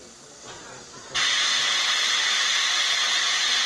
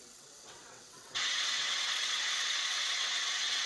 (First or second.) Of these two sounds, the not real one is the second